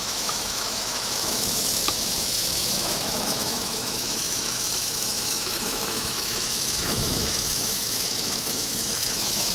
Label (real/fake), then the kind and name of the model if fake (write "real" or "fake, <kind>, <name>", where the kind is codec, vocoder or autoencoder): fake, autoencoder, DAC-VAE